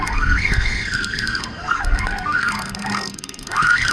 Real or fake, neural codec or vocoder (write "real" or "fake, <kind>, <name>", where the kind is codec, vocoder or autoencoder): fake, codec, SNAC